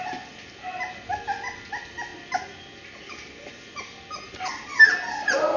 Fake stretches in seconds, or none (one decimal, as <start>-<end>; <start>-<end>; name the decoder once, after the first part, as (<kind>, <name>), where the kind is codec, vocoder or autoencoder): none